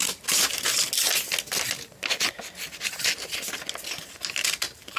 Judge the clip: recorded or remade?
recorded